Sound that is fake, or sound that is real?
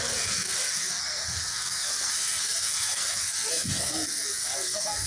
fake